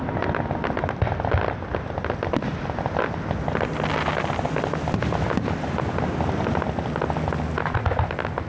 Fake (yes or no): no